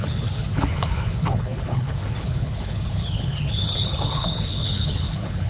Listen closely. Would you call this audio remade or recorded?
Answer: remade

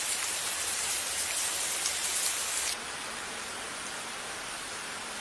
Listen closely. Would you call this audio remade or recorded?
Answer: recorded